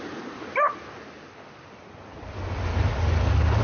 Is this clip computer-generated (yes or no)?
no